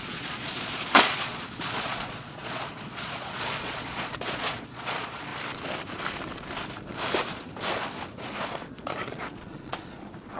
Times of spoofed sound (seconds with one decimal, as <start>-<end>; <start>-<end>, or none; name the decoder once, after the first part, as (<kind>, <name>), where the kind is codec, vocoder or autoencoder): 0.0-5.3 (vocoder, Vocos); 8.1-10.4